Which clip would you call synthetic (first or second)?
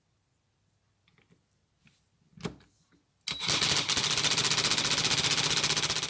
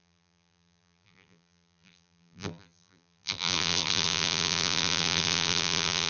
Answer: second